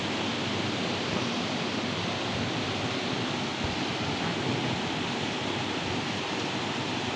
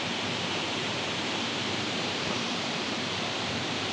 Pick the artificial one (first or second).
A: second